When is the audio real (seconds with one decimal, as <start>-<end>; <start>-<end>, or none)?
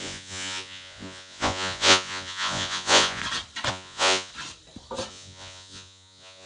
3.2-3.7; 4.3-5.1